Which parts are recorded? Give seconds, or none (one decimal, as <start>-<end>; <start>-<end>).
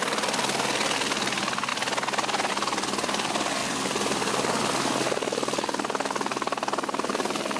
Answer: 0.0-3.6; 4.3-7.6